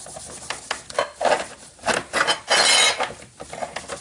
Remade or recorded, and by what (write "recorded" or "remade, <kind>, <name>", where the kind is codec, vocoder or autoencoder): recorded